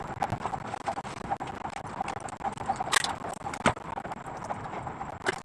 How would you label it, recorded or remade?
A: recorded